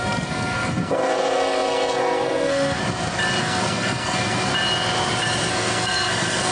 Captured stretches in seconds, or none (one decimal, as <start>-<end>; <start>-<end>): 2.8-3.4; 4.5-5.5

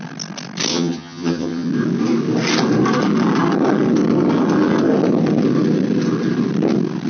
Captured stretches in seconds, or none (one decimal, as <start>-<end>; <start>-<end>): 0.0-0.7; 1.7-7.1

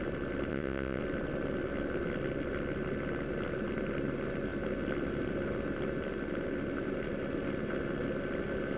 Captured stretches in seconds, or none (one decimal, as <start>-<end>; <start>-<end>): 0.0-0.5; 1.0-8.8